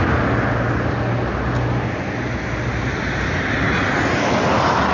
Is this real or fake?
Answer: real